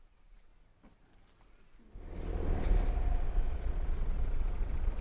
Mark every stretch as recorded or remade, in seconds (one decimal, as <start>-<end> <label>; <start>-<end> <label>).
0.0-0.5 remade; 0.5-3.5 recorded; 3.5-5.0 remade